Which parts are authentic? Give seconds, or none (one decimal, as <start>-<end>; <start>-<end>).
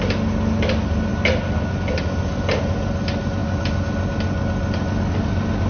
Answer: 0.0-5.7